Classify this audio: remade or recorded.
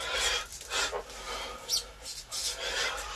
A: recorded